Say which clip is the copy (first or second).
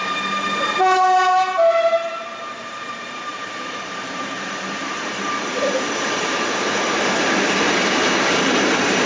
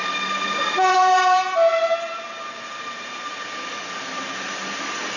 first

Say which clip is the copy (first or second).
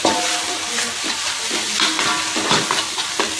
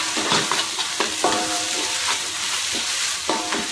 second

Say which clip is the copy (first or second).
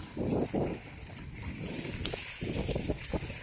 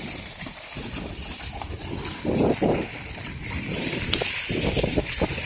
second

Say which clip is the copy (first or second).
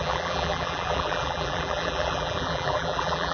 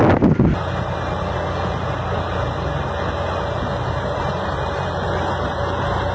first